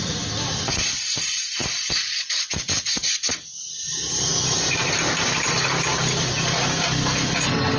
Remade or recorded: recorded